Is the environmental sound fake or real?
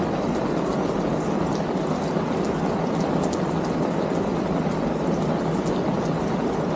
real